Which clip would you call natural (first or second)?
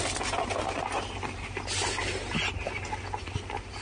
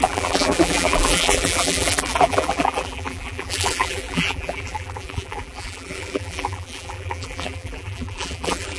first